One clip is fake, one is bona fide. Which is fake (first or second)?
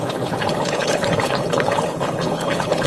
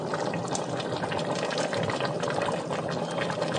first